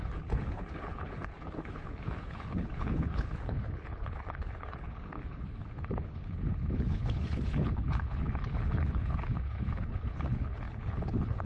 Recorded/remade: remade